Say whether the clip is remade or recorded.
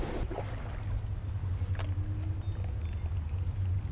recorded